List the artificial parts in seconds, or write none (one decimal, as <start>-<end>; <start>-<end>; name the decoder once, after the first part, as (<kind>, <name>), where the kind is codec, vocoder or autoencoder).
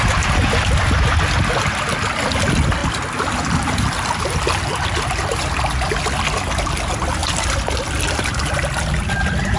none